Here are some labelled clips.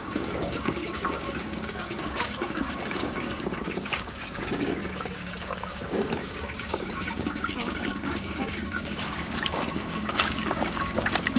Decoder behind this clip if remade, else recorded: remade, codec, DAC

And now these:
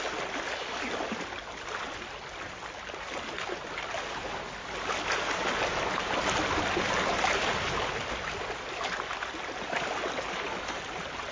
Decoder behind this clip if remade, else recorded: recorded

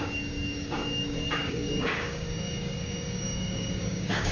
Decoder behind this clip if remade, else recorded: remade, codec, DAC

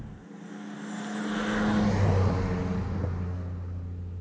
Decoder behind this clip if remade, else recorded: recorded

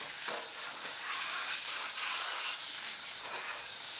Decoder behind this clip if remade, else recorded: remade, codec, DAC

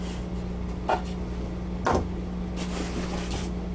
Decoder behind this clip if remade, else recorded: recorded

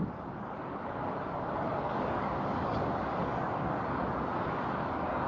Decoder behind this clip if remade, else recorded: remade, codec, DAC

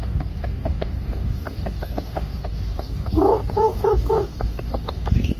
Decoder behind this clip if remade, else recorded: remade, codec, DAC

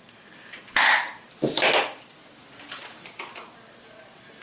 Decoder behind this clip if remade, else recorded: recorded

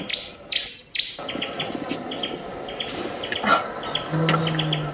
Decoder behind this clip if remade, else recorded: recorded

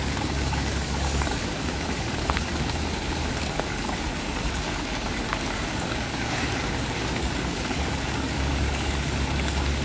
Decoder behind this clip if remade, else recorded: remade, codec, DAC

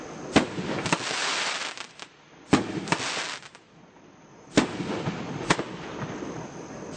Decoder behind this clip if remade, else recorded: recorded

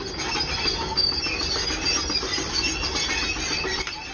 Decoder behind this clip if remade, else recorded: recorded